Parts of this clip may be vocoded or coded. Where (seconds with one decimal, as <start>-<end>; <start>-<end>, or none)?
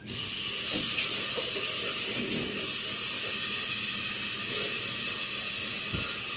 none